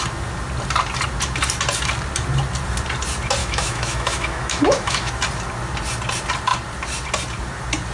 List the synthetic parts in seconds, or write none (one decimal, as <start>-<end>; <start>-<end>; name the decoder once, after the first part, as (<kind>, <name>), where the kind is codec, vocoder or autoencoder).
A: 3.4-5.1 (autoencoder, DAC-VAE)